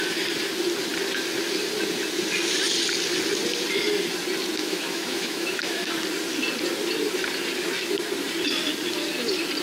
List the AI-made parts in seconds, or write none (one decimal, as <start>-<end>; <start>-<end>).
4.6-5.9